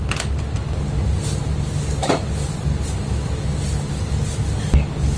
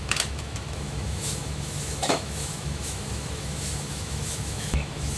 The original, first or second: first